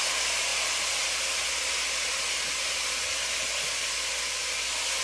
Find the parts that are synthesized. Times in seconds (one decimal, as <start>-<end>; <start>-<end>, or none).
none